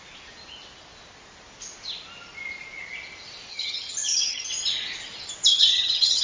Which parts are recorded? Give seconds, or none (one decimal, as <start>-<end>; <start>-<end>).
0.0-3.5; 4.5-5.5